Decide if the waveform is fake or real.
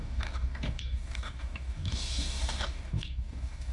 fake